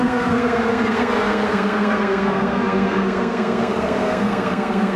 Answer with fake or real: fake